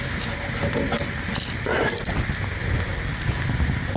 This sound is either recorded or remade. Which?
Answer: recorded